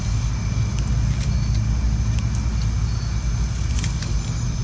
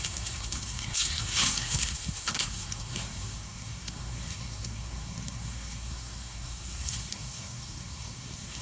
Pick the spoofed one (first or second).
second